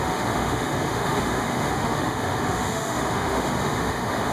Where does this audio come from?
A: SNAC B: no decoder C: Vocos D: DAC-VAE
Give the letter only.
D